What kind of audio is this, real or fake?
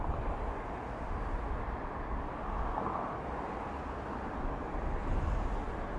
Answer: real